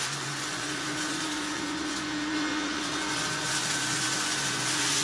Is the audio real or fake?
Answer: fake